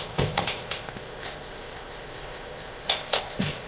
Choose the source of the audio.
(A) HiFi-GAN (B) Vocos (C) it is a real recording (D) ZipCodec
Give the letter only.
D